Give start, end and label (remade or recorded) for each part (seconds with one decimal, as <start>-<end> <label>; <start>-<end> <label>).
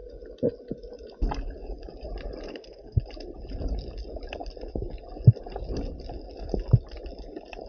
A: 0.0-2.5 recorded; 2.5-3.0 remade; 3.0-7.7 recorded